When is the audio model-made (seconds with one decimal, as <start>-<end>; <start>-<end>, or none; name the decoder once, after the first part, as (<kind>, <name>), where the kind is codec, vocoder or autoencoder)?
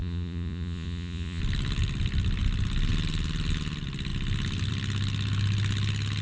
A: 0.0-1.4 (vocoder, Vocos)